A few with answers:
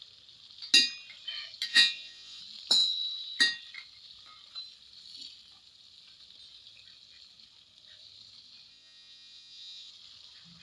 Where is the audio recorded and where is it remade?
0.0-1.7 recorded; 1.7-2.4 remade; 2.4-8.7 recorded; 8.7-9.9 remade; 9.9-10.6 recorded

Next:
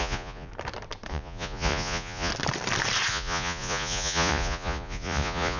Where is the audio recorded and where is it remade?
0.0-0.5 remade; 0.5-1.1 recorded; 1.1-2.3 remade; 2.3-3.1 recorded; 3.1-5.6 remade

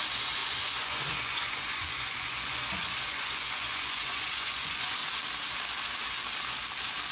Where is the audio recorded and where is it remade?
0.0-5.0 remade; 5.0-7.1 recorded

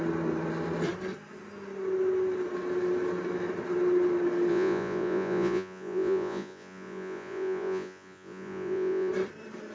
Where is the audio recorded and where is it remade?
0.0-4.5 recorded; 4.5-9.1 remade; 9.1-9.7 recorded

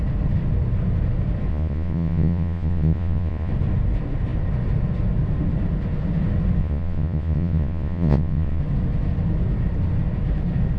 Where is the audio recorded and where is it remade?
0.0-1.5 recorded; 1.5-3.5 remade; 3.5-6.6 recorded; 6.6-8.6 remade; 8.6-10.8 recorded